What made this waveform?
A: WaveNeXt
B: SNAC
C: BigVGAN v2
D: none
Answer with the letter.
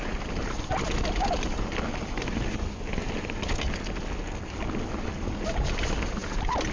D